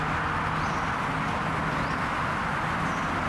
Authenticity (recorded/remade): recorded